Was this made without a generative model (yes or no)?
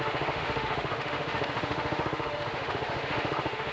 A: no